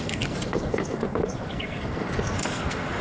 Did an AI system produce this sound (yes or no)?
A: yes